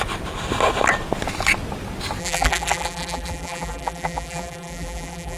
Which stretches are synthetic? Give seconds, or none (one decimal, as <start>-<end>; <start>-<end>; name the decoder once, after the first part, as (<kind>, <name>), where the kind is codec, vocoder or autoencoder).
2.2-5.4 (vocoder, BigVGAN v2)